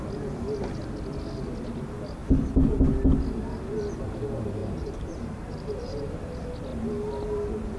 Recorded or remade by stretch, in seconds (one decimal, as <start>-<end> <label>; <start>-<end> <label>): 0.0-4.6 recorded; 4.6-6.1 remade; 6.1-7.8 recorded